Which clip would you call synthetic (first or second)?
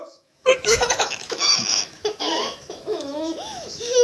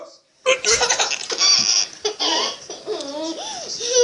first